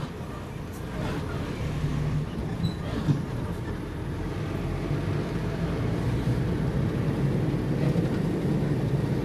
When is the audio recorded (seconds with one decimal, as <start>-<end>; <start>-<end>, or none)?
0.0-9.2